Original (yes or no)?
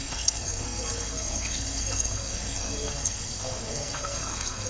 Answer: no